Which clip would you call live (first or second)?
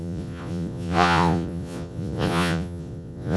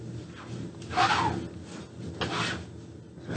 second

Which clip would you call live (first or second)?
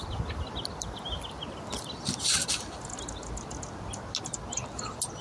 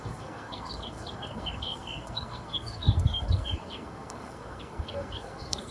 first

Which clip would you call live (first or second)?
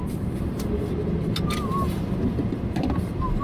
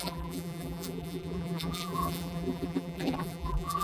first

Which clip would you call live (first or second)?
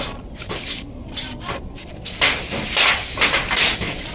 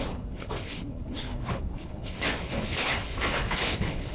first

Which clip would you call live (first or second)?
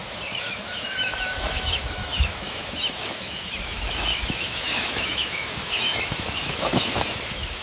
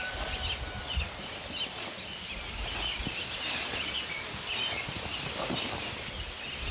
second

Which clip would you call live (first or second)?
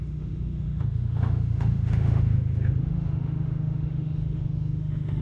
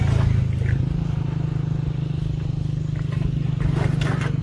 second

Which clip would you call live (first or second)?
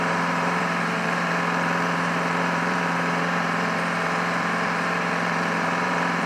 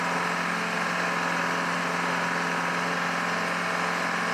second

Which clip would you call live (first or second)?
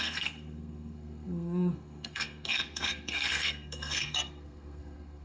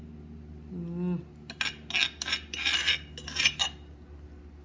second